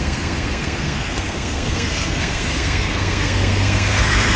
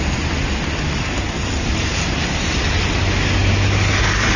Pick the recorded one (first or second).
second